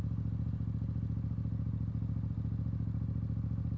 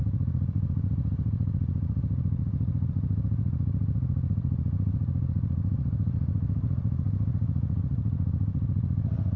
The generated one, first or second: second